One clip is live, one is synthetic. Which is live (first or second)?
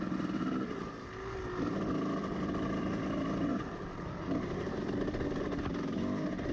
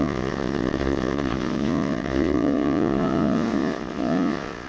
first